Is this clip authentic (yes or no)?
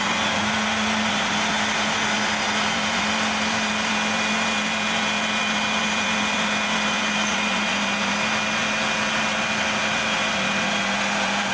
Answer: yes